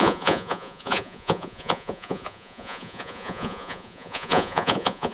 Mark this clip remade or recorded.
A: remade